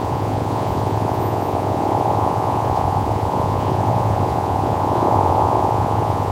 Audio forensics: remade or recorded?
remade